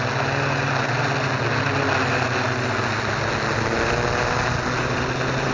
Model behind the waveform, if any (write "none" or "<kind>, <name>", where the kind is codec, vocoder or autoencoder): none